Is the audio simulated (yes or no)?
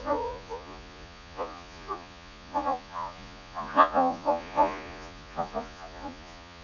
yes